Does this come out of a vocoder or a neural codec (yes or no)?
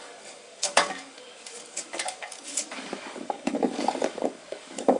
yes